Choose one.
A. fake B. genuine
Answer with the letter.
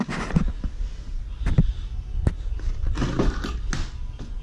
B